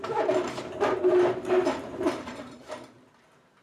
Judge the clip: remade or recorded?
remade